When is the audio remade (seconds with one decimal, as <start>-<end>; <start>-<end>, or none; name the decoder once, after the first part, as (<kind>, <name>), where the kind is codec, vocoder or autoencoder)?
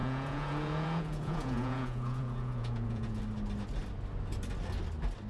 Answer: 0.0-3.2 (vocoder, Vocos)